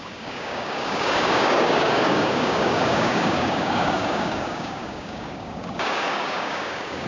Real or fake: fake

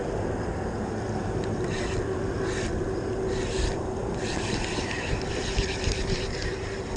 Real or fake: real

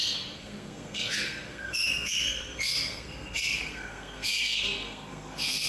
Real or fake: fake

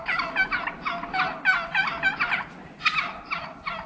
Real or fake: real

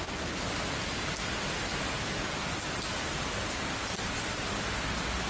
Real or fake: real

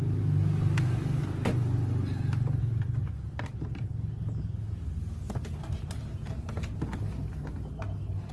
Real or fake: real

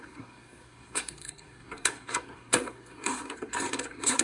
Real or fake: fake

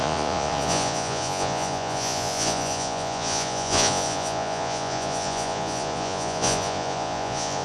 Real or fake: fake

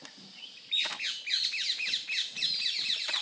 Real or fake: real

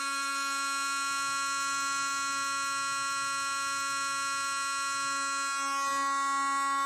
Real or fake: real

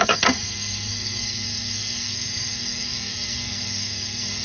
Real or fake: fake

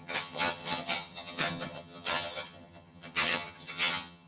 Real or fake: fake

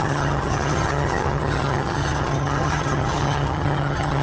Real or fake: fake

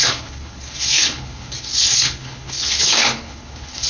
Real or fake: fake